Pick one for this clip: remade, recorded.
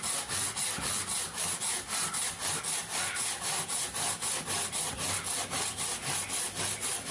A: recorded